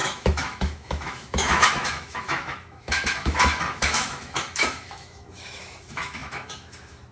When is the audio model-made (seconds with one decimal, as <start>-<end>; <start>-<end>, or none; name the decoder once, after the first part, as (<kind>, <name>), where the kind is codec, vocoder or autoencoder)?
0.0-7.1 (autoencoder, DAC-VAE)